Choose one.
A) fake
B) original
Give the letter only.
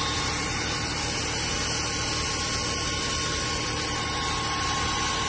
B